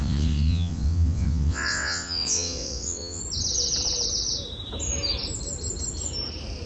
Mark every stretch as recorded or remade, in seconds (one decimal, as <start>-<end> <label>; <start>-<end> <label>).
0.0-3.2 remade; 3.2-6.7 recorded